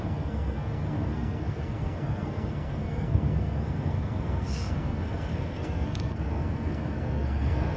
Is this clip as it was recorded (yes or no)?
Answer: no